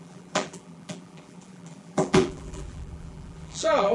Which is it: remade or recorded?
remade